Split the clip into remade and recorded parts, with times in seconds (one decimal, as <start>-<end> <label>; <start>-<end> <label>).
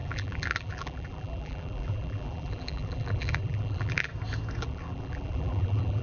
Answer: 0.0-4.1 remade; 4.1-4.6 recorded; 4.6-6.0 remade